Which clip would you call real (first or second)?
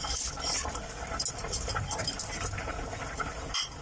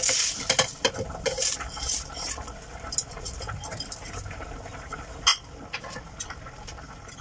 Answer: first